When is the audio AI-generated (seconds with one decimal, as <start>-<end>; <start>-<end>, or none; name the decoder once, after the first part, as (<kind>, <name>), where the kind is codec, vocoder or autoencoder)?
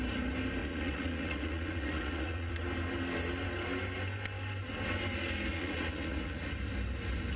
0.6-2.5 (vocoder, Vocos); 5.5-6.5